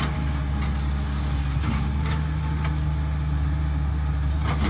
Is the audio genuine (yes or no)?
yes